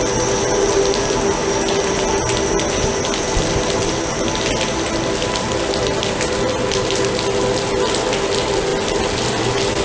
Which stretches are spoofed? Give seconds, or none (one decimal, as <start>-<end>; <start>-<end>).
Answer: none